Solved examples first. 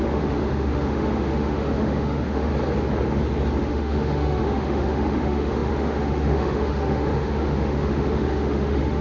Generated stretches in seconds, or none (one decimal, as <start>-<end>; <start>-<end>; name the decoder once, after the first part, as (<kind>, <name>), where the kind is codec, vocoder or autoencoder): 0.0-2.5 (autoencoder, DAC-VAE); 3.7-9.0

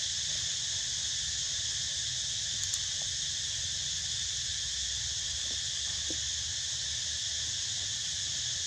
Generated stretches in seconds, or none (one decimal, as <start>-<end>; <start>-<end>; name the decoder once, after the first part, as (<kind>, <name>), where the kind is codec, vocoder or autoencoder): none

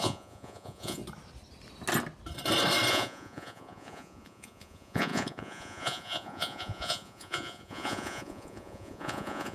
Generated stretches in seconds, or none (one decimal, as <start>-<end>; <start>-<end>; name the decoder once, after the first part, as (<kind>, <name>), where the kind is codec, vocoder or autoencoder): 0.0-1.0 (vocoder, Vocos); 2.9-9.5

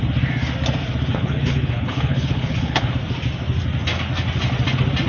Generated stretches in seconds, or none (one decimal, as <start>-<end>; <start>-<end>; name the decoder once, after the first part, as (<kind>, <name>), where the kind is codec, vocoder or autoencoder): 1.1-2.9 (codec, HILCodec)